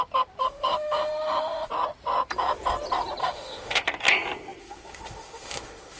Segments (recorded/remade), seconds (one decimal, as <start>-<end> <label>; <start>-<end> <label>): 0.0-0.4 recorded; 0.4-1.7 remade; 1.7-3.2 recorded; 3.2-3.8 remade; 3.8-4.6 recorded; 4.6-6.0 remade